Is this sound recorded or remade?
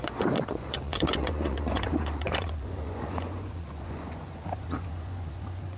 remade